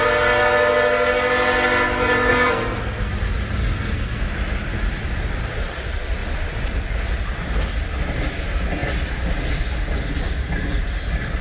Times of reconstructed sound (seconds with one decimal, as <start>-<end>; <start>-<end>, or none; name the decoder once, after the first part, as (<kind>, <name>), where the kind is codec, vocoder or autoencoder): 2.3-3.1 (codec, SNAC); 3.6-4.2